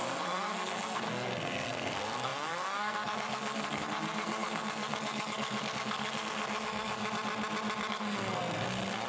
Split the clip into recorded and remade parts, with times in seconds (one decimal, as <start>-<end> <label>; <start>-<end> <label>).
0.0-7.0 remade; 7.0-7.9 recorded; 7.9-9.1 remade

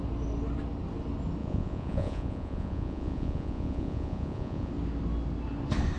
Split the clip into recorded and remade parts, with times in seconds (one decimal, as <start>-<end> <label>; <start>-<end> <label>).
0.0-1.4 recorded; 1.4-4.7 remade; 4.7-6.0 recorded

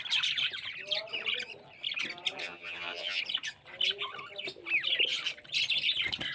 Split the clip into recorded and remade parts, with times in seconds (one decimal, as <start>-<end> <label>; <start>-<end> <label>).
0.0-2.4 recorded; 2.4-3.2 remade; 3.2-6.3 recorded

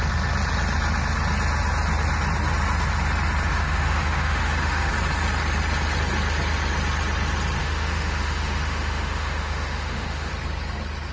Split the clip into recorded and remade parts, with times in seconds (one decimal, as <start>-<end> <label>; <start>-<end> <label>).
0.0-3.5 recorded; 3.5-4.9 remade; 4.9-7.6 recorded; 7.6-10.3 remade; 10.3-11.1 recorded